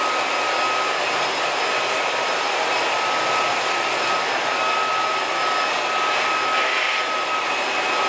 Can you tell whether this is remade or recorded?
recorded